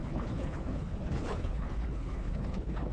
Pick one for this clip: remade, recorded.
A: remade